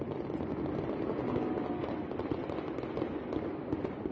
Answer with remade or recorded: recorded